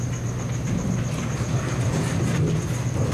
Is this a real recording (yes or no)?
yes